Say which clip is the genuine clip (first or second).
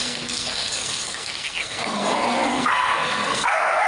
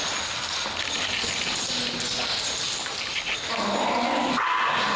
second